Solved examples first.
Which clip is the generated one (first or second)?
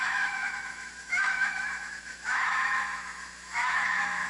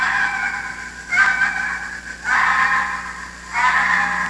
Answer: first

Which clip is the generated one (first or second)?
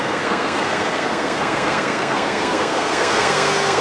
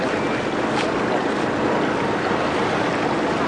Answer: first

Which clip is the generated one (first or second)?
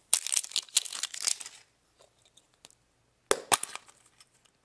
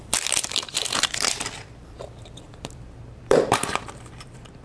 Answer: second